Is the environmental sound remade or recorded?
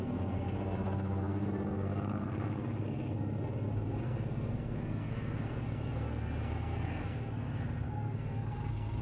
remade